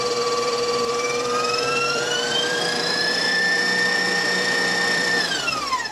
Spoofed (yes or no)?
yes